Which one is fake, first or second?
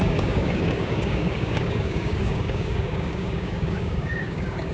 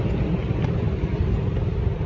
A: first